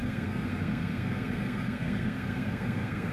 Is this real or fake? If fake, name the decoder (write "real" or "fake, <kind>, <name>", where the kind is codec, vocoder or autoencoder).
fake, codec, SNAC